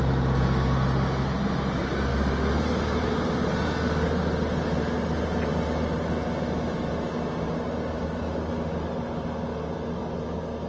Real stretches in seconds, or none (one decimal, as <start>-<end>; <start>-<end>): 0.0-10.7